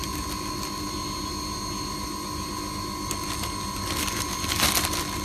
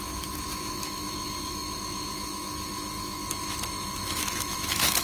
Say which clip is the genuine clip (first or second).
first